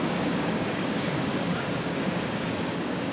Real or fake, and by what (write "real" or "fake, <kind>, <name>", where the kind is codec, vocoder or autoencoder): fake, codec, DAC